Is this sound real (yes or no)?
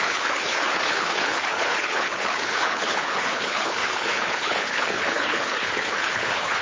no